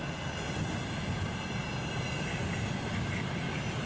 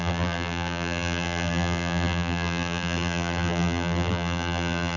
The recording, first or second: first